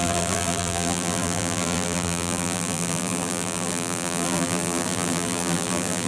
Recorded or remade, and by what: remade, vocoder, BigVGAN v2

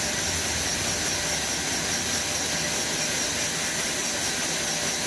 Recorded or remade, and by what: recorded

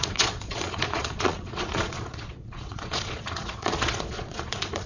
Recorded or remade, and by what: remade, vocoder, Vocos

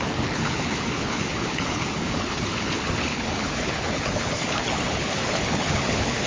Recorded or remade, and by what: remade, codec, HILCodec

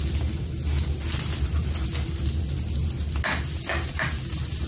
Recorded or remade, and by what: recorded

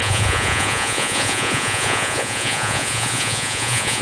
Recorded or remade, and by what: remade, vocoder, Vocos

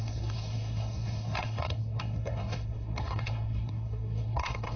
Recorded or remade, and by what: remade, codec, SNAC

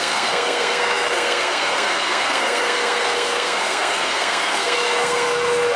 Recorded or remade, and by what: remade, codec, SNAC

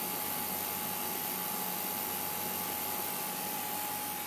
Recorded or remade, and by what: recorded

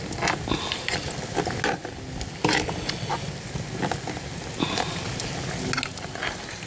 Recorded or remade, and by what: recorded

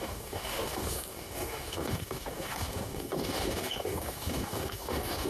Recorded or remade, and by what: remade, codec, DAC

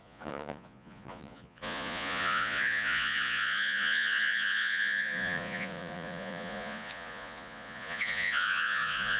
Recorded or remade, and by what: remade, vocoder, Vocos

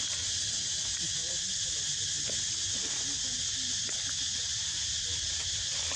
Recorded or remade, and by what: recorded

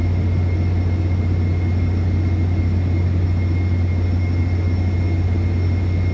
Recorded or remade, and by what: recorded